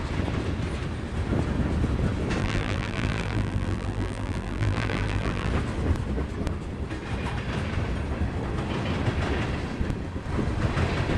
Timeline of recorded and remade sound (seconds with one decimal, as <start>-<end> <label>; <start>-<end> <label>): 0.0-2.4 recorded; 2.4-5.5 remade; 5.5-11.2 recorded